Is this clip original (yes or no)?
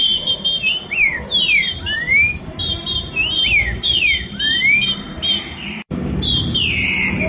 no